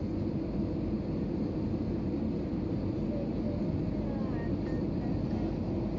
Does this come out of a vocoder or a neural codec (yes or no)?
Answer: no